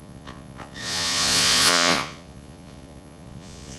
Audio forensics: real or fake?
fake